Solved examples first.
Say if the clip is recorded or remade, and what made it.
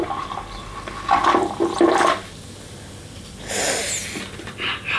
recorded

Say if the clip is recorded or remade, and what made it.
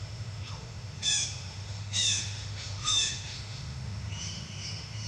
remade, autoencoder, DAC-VAE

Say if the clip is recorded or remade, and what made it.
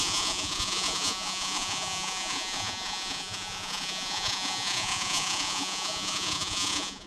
remade, vocoder, Vocos